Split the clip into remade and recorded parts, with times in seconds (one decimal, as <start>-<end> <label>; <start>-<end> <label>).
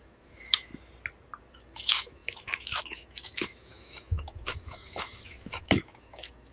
0.0-0.7 remade; 0.7-1.5 recorded; 1.5-6.5 remade